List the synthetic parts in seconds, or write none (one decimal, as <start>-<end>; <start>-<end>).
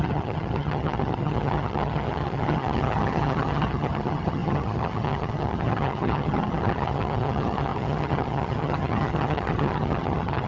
0.0-10.5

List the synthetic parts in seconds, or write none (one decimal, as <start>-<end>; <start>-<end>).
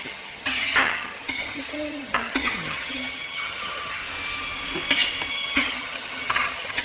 0.0-4.0; 5.3-6.8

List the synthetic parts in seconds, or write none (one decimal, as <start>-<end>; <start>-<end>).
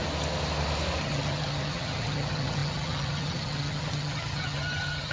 1.0-5.1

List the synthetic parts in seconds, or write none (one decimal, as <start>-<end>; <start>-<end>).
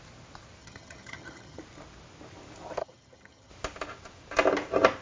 0.6-1.6; 2.8-3.5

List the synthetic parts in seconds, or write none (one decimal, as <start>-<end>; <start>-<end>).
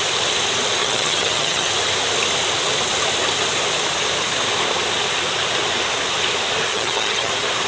0.8-1.7; 6.7-7.3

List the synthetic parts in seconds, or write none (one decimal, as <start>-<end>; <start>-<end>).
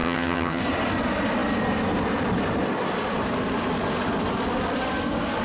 0.0-0.6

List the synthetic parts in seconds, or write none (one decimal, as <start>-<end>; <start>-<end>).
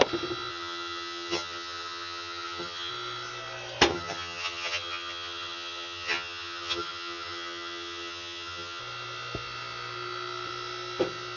0.5-2.9; 3.9-8.8